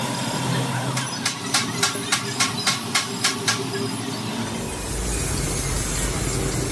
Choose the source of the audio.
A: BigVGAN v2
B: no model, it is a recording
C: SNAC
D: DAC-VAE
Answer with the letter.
B